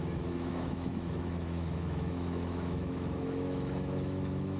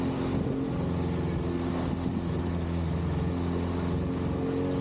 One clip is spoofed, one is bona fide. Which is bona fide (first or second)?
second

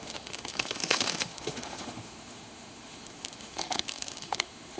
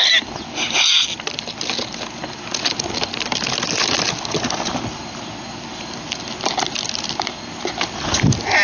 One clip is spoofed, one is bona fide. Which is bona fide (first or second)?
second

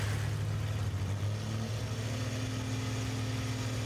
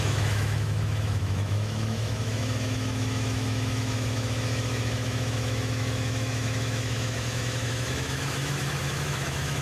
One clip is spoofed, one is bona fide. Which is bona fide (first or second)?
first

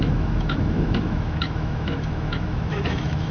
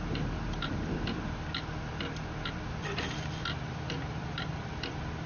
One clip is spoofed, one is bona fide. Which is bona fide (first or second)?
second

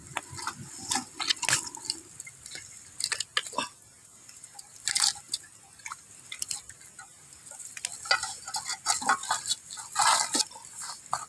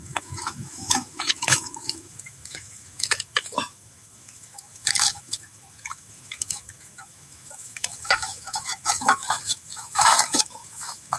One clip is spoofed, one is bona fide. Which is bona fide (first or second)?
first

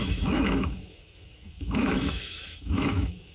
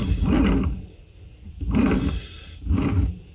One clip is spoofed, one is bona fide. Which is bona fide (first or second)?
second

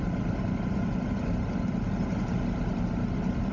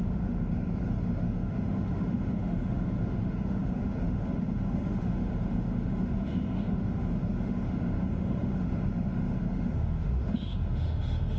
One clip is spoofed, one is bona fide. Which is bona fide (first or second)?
first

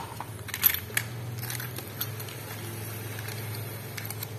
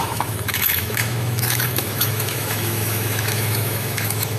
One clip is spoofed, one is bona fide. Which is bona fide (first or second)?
first